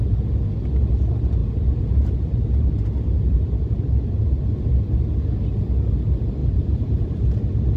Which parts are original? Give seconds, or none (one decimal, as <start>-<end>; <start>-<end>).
0.0-1.4; 4.5-6.4; 7.2-7.8